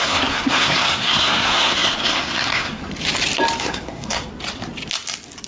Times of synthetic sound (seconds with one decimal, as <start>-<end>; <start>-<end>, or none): 0.0-2.8; 3.6-4.3